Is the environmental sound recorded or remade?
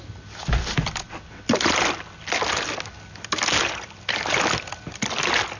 recorded